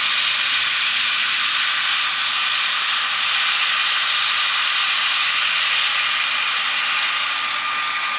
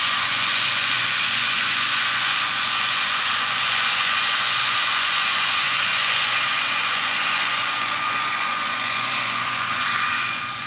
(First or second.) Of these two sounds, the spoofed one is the second